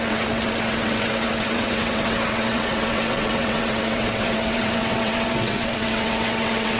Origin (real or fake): fake